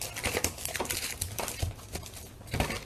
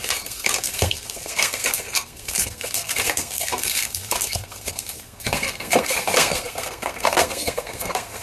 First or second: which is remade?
second